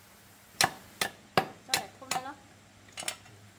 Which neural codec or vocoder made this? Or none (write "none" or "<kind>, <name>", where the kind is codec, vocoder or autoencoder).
none